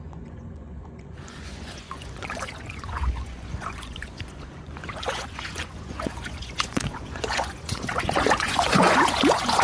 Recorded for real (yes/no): no